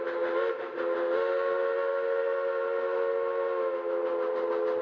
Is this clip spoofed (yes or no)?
no